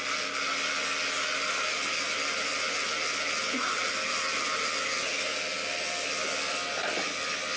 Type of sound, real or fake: real